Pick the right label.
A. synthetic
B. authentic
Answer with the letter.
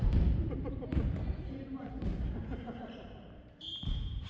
A